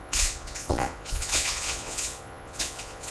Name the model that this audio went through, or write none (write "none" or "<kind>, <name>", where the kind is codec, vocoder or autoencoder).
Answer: vocoder, Vocos